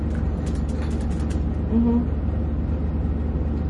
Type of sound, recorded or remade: recorded